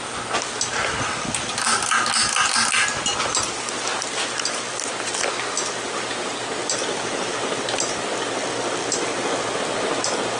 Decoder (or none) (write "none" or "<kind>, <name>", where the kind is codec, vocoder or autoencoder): none